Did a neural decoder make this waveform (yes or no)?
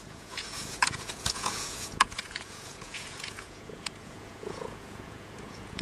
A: yes